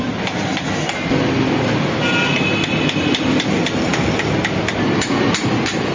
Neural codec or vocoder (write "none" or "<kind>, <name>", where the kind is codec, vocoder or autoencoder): none